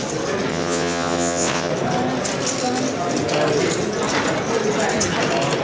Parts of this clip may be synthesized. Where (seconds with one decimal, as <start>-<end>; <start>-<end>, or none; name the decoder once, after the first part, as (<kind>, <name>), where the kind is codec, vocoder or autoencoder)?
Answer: 0.5-1.7 (vocoder, WaveNeXt)